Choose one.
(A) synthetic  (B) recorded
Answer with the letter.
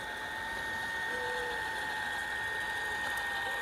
B